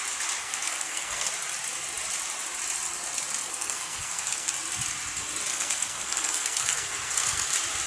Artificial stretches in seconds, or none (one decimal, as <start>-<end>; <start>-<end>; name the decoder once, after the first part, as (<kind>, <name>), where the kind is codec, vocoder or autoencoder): 0.4-1.3 (codec, SNAC); 3.4-4.5; 5.5-7.5